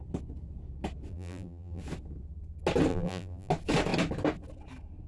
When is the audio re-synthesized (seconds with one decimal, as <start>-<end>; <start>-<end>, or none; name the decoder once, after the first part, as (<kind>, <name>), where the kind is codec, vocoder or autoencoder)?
1.1-1.8 (vocoder, BigVGAN v2); 2.9-3.5